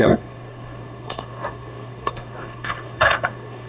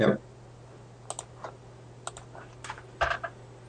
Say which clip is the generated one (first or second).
first